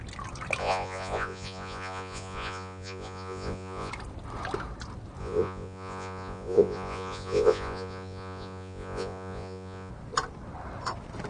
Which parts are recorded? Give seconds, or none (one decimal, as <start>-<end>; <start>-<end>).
0.0-0.6; 3.9-5.2; 9.9-11.3